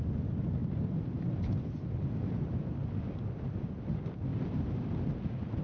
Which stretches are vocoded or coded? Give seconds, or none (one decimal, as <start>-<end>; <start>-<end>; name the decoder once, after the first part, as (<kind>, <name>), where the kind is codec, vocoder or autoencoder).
4.3-4.9 (vocoder, BigVGAN v2)